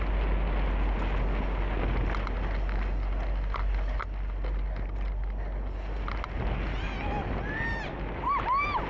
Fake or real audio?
real